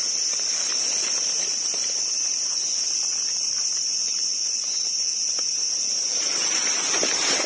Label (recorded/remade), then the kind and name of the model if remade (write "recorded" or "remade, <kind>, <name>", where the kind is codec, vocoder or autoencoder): recorded